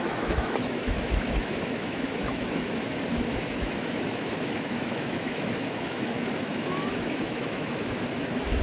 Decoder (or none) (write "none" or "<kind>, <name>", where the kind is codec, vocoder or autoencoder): autoencoder, DAC-VAE